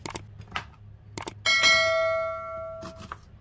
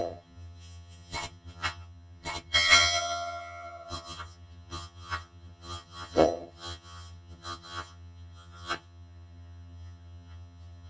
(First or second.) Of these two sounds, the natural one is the first